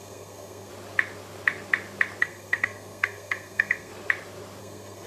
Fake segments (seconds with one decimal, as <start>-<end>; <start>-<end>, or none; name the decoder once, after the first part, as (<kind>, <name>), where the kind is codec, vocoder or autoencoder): 0.0-0.7 (codec, SNAC); 2.2-3.9; 4.6-5.1